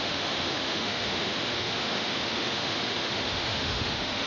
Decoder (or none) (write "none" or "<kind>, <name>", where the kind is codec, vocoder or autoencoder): autoencoder, DAC-VAE